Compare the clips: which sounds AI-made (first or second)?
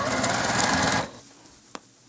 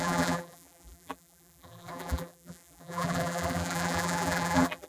second